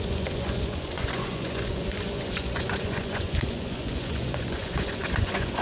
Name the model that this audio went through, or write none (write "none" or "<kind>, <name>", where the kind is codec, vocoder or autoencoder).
vocoder, Vocos